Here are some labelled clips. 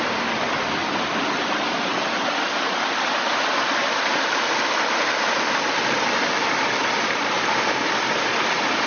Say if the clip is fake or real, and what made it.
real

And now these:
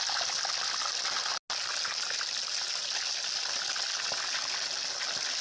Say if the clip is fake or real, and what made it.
real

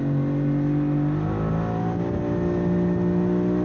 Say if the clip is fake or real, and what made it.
real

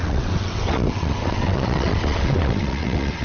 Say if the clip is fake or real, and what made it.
fake, vocoder, WaveNeXt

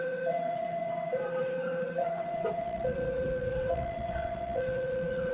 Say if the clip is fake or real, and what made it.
fake, vocoder, WaveNeXt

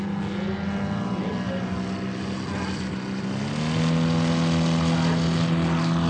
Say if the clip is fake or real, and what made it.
real